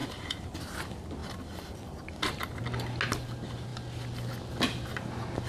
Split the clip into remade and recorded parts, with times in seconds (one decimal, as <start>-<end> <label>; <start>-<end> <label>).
0.0-5.5 recorded